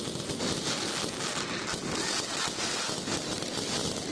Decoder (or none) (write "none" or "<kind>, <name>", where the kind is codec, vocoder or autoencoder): none